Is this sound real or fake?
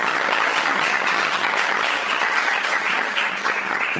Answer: fake